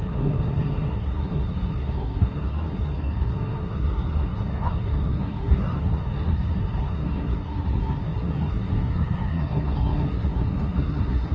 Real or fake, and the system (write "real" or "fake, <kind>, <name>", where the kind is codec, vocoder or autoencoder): fake, codec, SNAC